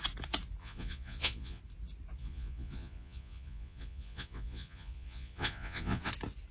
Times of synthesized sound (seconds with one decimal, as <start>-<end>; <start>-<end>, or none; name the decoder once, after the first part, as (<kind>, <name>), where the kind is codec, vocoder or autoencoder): 0.6-1.6 (vocoder, Vocos); 2.2-6.1